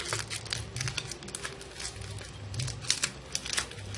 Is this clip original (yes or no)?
yes